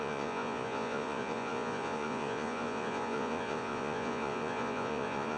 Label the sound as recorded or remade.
remade